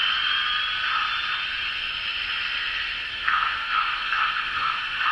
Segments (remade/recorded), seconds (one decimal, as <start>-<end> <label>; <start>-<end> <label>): 0.0-3.1 recorded; 3.1-5.1 remade